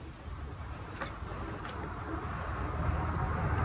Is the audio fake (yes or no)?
no